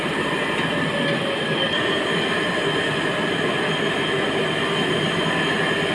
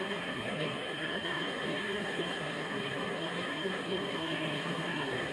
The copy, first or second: second